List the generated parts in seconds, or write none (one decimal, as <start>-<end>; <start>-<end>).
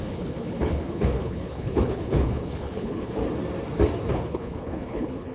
0.0-3.2; 4.1-5.3